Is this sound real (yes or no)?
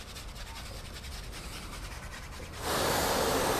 yes